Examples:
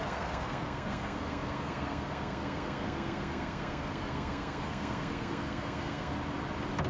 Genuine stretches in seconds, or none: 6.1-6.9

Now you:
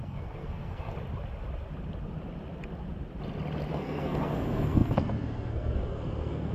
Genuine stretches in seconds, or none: 0.9-3.7

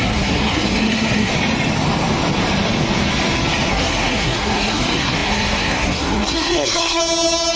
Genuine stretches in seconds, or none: 1.3-3.7; 7.0-7.6

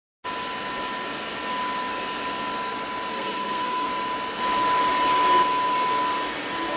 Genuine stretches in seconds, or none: 0.0-3.1; 3.9-6.8

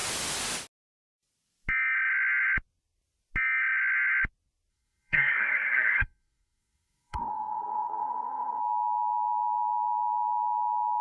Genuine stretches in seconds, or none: 0.0-4.7; 8.6-11.0

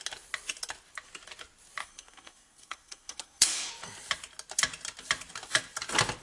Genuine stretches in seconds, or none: 0.0-1.8; 3.7-6.2

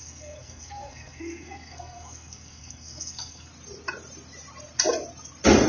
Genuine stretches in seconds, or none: 3.5-5.7

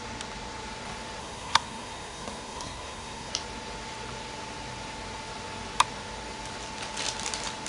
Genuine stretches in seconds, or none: 0.0-1.2; 3.3-7.7